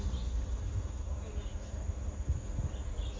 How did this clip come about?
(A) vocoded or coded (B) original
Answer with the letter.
B